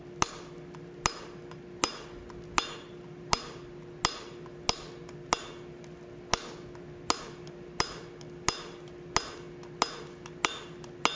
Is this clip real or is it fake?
real